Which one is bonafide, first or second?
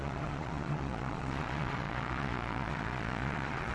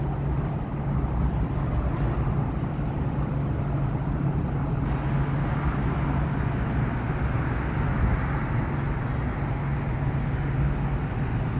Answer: second